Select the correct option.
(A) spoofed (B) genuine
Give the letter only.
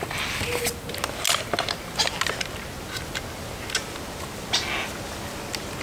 B